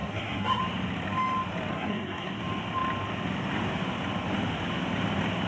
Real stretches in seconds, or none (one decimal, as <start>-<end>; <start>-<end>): 0.6-1.7; 2.4-5.5